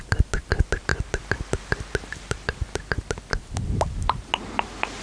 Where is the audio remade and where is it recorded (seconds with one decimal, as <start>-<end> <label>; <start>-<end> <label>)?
0.0-0.9 recorded; 0.9-3.3 remade; 3.3-5.0 recorded

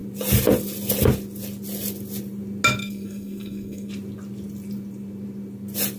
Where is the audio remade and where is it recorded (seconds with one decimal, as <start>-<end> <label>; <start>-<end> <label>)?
0.0-2.8 recorded; 2.8-3.9 remade; 3.9-6.0 recorded

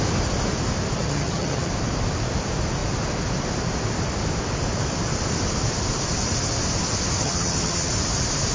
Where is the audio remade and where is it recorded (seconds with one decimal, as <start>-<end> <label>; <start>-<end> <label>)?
0.0-1.0 recorded; 1.0-1.7 remade; 1.7-7.2 recorded; 7.2-7.9 remade; 7.9-8.5 recorded

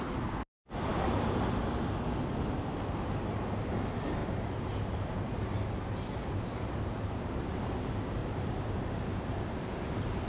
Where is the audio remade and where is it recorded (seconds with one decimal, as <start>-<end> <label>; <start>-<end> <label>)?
0.0-4.2 recorded; 4.2-7.6 remade; 7.6-8.2 recorded; 8.2-10.3 remade